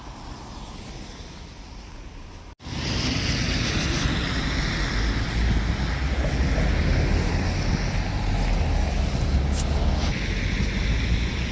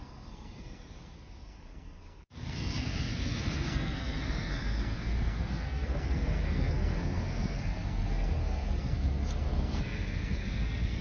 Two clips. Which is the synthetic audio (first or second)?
second